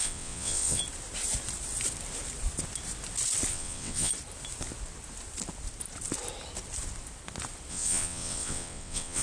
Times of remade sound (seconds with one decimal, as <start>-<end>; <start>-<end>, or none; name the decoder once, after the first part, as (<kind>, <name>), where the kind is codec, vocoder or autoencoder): 0.0-0.8 (vocoder, WaveNeXt); 3.5-4.1; 7.7-9.2